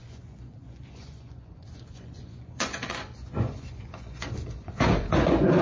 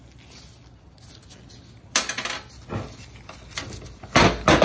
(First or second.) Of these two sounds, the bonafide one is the second